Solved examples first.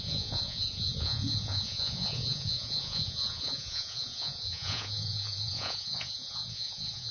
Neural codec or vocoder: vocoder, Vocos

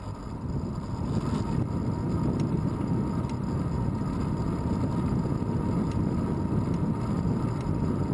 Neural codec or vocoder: none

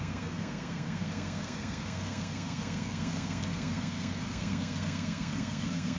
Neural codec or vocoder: codec, SNAC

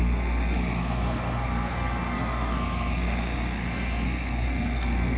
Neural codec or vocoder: codec, SNAC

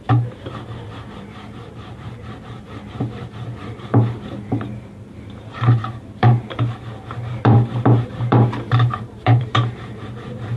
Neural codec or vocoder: vocoder, BigVGAN v2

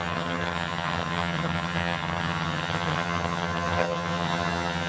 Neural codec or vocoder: vocoder, HiFi-GAN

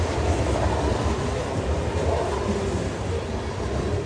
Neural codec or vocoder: none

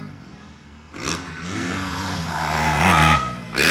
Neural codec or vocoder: codec, SNAC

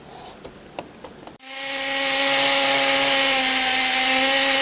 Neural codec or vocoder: none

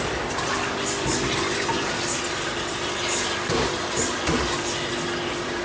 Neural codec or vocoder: none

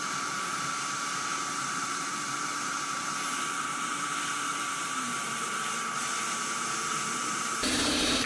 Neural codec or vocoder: vocoder, BigVGAN v2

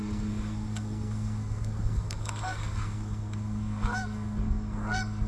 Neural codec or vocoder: codec, SNAC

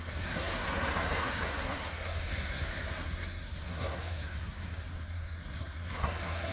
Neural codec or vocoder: codec, SNAC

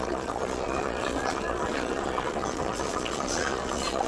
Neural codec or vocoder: vocoder, Vocos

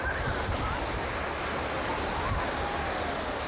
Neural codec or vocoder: none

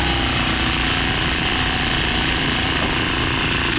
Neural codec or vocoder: none